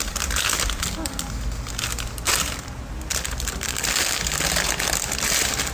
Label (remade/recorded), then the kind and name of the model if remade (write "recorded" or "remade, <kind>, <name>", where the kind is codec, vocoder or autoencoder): recorded